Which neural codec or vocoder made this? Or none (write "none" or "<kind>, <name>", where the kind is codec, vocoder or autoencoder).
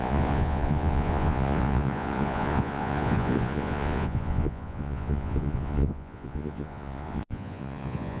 vocoder, Vocos